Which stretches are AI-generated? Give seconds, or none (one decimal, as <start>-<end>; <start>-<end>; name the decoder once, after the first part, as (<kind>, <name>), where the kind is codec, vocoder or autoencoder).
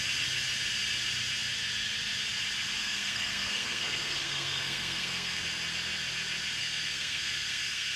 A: 2.8-5.4 (codec, SNAC); 6.6-8.0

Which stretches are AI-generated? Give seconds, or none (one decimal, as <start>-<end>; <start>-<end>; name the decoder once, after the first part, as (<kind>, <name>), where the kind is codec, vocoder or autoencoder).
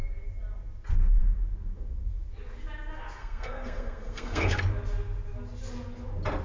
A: 3.2-4.6 (codec, SNAC)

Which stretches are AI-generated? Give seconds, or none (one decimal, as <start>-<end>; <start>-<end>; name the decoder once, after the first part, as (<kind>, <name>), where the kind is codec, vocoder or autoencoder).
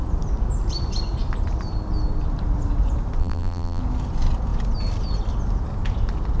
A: 3.2-3.8 (vocoder, BigVGAN v2)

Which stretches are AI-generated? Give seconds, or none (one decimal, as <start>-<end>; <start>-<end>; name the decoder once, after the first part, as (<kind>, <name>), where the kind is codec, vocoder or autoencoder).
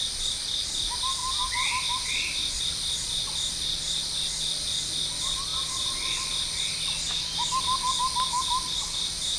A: none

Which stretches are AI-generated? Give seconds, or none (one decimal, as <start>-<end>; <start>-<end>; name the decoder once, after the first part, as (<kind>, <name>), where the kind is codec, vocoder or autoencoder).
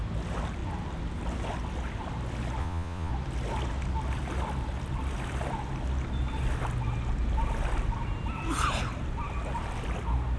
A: 2.6-3.1 (vocoder, Vocos)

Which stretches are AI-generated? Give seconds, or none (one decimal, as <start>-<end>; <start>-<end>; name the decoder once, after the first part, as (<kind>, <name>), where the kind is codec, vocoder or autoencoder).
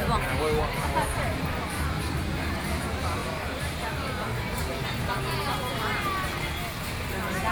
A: 3.2-4.6 (vocoder, BigVGAN v2)